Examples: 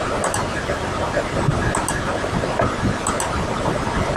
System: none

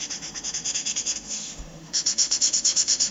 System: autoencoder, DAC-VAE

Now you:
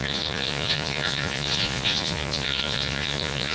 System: vocoder, Vocos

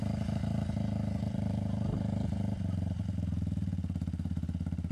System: vocoder, BigVGAN v2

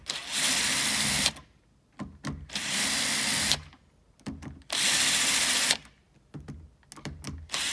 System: none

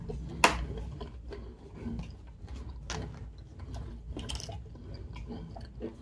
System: none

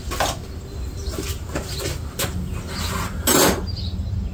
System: none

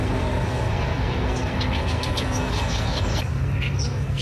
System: codec, SNAC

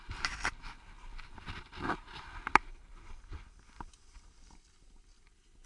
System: none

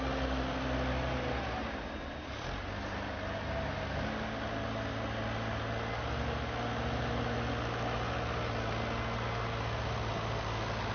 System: none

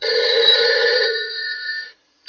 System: vocoder, Vocos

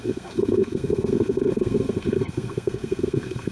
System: codec, SNAC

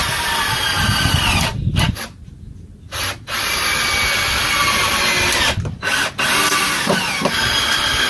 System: none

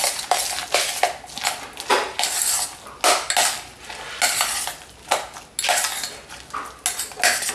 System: none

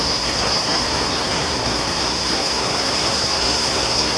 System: codec, SNAC